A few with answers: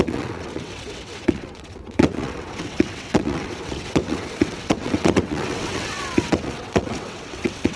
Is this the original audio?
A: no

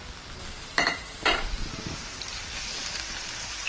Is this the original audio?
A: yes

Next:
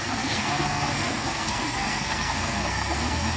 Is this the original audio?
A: no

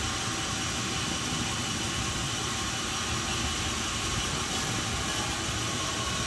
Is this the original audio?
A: yes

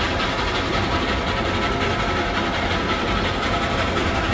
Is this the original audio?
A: yes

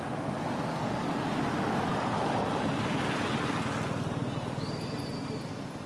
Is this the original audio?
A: yes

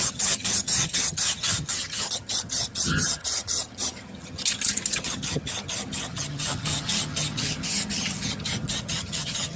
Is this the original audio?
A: no